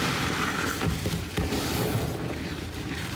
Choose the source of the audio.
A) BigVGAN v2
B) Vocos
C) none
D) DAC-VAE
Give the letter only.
A